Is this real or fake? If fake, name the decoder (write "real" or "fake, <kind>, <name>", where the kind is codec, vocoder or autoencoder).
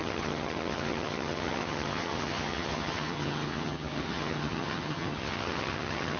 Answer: fake, vocoder, HiFi-GAN